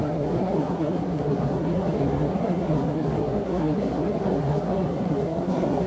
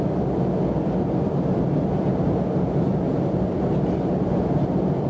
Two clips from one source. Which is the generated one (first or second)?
first